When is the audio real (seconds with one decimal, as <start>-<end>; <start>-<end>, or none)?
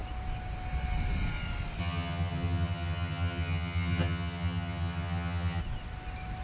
0.0-1.8; 5.6-6.4